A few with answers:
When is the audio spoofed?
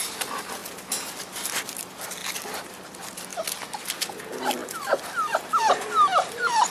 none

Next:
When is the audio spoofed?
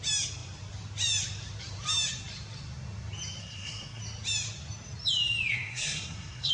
3.4-4.0 (codec, SNAC); 5.5-6.5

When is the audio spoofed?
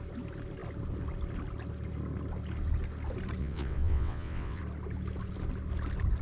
3.4-4.6 (vocoder, WaveNeXt)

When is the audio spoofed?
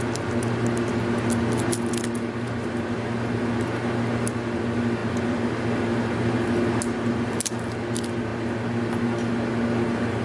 none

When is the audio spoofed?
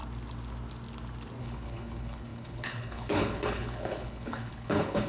1.4-5.1 (codec, HILCodec)